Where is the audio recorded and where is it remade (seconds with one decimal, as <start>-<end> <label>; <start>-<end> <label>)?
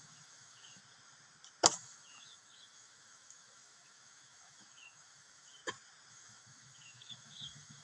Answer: 0.0-0.8 remade; 0.8-1.7 recorded; 1.7-5.6 remade; 5.6-6.1 recorded; 6.1-7.8 remade